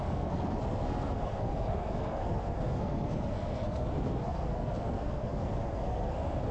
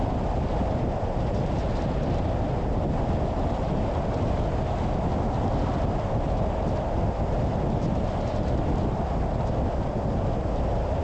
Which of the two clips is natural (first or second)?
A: second